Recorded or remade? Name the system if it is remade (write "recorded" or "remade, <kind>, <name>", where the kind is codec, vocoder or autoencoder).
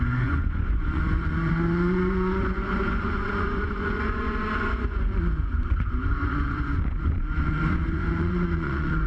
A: remade, vocoder, Vocos